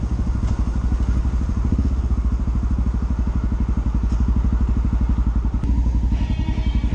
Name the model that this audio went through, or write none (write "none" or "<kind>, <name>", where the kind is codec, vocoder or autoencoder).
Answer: none